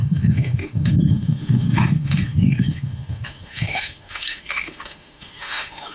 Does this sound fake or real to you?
fake